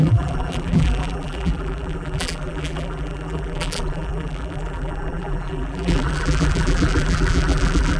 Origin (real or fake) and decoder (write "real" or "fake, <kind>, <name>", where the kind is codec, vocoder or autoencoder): fake, vocoder, BigVGAN v2